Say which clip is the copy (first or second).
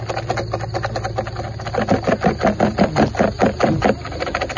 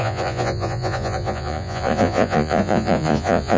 second